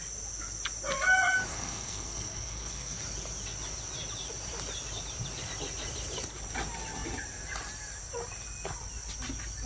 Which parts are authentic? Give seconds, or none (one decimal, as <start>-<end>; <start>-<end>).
0.0-1.5; 3.0-9.7